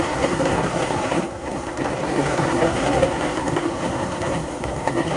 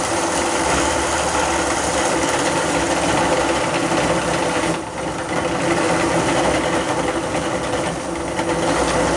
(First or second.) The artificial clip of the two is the first